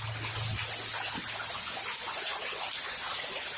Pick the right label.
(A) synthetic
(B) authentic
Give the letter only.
B